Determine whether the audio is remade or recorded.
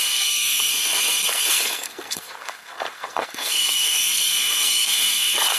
remade